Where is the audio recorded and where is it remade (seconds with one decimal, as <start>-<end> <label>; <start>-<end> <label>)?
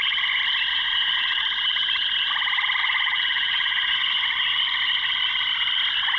0.0-0.7 recorded; 0.7-1.4 remade; 1.4-2.8 recorded; 2.8-4.1 remade; 4.1-6.2 recorded